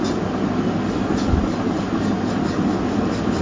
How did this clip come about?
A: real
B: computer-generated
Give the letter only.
A